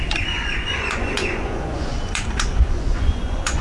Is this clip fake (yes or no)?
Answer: yes